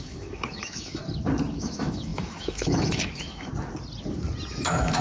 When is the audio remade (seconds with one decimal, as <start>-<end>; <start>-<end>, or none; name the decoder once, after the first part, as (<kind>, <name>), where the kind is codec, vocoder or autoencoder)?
0.0-1.0 (autoencoder, DAC-VAE); 1.5-3.5; 4.5-5.0